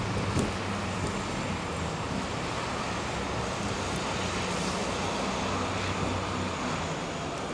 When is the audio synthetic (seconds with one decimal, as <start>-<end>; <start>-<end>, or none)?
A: none

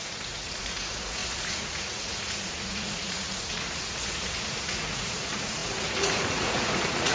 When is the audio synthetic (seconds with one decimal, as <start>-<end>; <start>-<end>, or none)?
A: 0.0-7.1

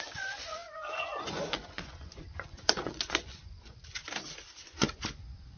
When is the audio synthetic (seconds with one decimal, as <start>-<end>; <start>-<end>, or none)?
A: 0.0-4.0; 4.6-5.6

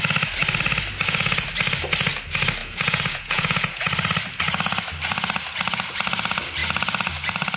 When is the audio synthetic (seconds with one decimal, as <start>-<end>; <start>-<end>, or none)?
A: 2.6-3.8

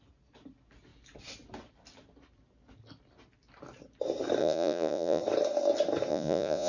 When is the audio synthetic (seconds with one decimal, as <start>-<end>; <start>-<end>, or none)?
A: 4.4-5.2; 6.1-6.7